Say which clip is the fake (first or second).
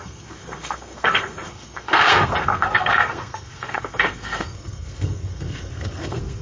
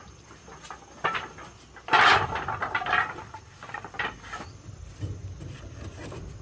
first